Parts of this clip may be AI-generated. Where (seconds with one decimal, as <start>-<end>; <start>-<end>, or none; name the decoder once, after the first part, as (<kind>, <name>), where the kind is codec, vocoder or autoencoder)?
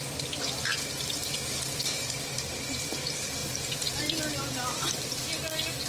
none